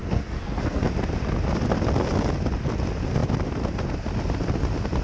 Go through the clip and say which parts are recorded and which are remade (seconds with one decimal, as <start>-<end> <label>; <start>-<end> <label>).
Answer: 0.0-0.9 remade; 0.9-5.0 recorded

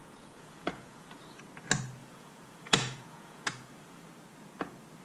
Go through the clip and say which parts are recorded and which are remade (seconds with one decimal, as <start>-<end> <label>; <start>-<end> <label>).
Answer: 0.0-1.4 remade; 1.4-2.0 recorded; 2.0-4.1 remade; 4.1-5.0 recorded

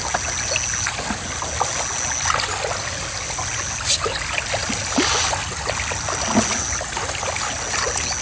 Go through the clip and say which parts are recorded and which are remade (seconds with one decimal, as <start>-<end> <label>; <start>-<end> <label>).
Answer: 0.0-8.2 recorded

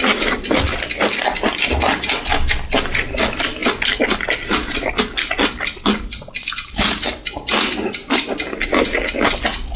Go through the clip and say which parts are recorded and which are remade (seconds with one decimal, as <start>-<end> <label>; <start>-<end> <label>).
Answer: 0.0-9.8 recorded

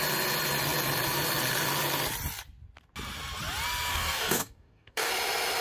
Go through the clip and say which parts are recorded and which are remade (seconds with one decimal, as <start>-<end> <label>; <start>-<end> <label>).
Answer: 0.0-3.9 recorded; 3.9-5.1 remade; 5.1-5.6 recorded

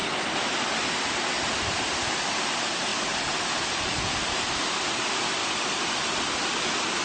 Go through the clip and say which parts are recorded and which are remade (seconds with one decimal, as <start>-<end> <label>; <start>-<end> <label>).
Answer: 0.0-1.4 recorded; 1.4-2.9 remade; 2.9-3.6 recorded; 3.6-5.4 remade; 5.4-7.0 recorded

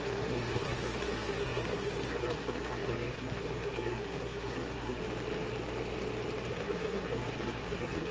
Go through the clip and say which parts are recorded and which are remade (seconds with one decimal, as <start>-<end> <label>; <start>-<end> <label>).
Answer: 0.0-5.0 remade; 5.0-6.5 recorded; 6.5-8.1 remade